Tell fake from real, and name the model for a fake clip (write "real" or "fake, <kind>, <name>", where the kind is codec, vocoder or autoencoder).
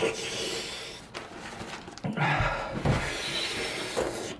fake, vocoder, BigVGAN v2